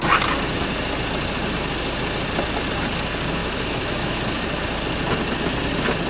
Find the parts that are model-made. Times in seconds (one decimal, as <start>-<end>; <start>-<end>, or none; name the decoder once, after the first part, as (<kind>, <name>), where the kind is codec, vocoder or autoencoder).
3.4-4.2 (autoencoder, DAC-VAE)